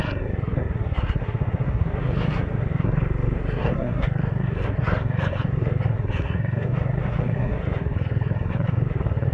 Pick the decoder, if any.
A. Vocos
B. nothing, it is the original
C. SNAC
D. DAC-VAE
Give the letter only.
C